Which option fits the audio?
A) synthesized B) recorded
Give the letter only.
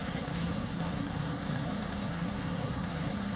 A